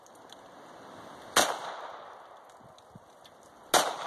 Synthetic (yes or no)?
no